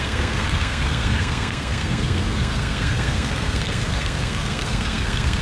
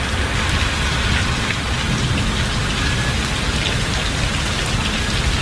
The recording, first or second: second